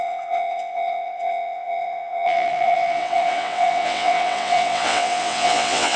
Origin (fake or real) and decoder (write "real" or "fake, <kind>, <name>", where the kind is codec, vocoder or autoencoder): fake, vocoder, WaveNeXt